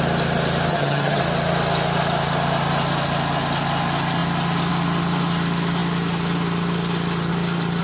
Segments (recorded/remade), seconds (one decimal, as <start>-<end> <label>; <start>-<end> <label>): 0.0-0.7 recorded; 0.7-1.2 remade; 1.2-7.8 recorded